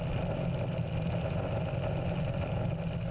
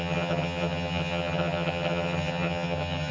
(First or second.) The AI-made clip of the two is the second